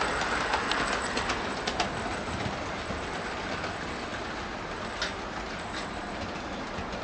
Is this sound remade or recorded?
recorded